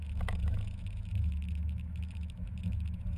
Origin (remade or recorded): remade